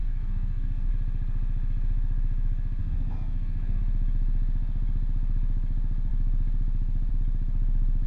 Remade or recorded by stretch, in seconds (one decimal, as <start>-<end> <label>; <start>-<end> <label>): 0.0-0.9 remade; 0.9-2.8 recorded; 2.8-3.8 remade; 3.8-8.1 recorded